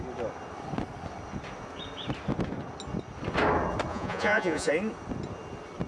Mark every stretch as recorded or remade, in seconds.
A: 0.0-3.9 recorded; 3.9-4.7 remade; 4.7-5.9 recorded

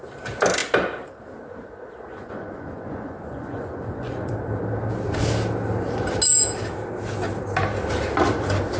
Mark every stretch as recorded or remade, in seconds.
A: 0.0-2.1 recorded; 2.1-4.3 remade; 4.3-8.8 recorded

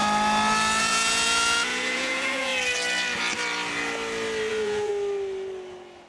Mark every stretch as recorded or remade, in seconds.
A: 0.0-0.8 recorded; 0.8-2.5 remade; 2.5-4.5 recorded; 4.5-4.9 remade; 4.9-6.1 recorded

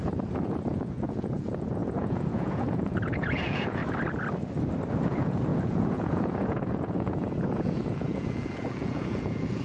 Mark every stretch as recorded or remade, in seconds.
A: 0.0-3.8 remade; 3.8-4.9 recorded; 4.9-9.6 remade

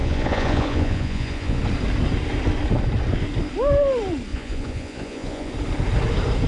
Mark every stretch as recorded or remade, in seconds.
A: 0.0-1.6 remade; 1.6-4.3 recorded; 4.3-5.5 remade; 5.5-6.5 recorded